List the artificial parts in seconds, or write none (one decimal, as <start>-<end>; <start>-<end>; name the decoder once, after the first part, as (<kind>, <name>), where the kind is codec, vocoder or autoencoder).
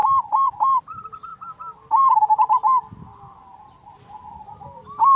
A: 0.0-0.8 (vocoder, BigVGAN v2)